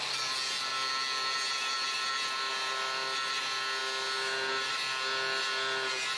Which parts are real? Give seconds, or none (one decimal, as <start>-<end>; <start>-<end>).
0.0-6.2